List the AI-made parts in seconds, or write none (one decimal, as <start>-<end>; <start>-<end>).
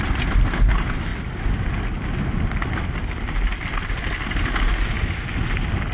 none